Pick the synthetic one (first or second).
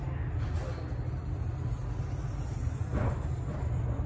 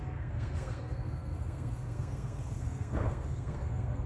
second